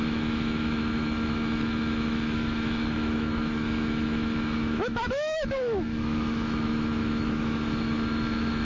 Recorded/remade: remade